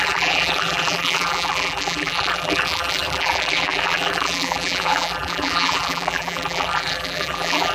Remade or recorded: remade